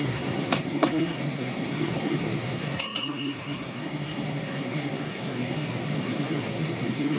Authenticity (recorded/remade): remade